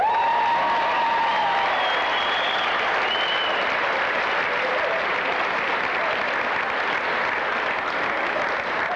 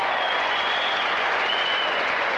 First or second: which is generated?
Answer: second